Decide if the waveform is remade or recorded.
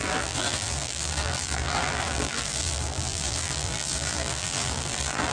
remade